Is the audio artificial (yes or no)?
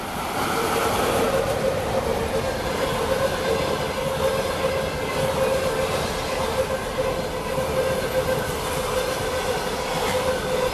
no